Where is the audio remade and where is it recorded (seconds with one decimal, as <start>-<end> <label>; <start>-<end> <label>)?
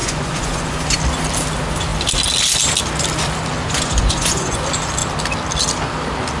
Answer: 0.0-1.0 remade; 1.0-3.6 recorded; 3.6-4.6 remade; 4.6-6.4 recorded